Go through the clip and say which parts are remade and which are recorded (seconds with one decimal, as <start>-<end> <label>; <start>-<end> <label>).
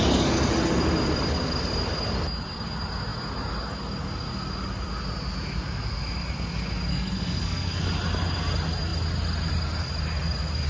0.0-6.9 recorded; 6.9-7.8 remade; 7.8-10.7 recorded